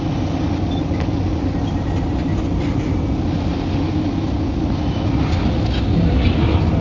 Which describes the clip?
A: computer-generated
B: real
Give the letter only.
B